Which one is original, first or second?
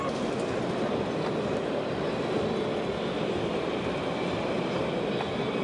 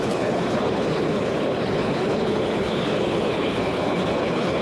first